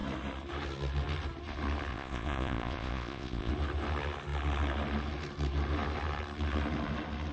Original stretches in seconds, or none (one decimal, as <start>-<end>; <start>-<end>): 0.0-1.9; 3.5-7.3